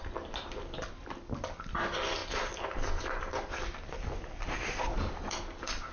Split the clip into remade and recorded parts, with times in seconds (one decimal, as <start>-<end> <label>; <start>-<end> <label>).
0.0-5.9 recorded